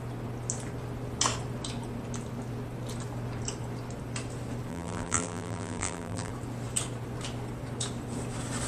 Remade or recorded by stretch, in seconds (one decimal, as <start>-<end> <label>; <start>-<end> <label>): 0.0-4.7 recorded; 4.7-6.3 remade; 6.3-8.7 recorded